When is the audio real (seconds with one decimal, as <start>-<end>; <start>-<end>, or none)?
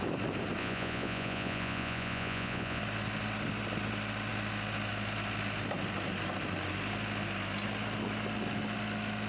0.0-0.6; 2.8-9.3